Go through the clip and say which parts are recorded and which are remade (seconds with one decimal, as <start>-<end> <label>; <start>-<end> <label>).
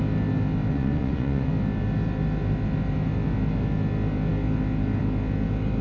0.0-0.7 recorded; 0.7-1.5 remade; 1.5-5.8 recorded